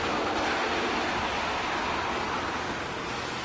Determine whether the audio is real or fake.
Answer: real